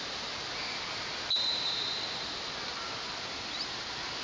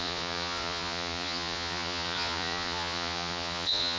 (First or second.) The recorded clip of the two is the first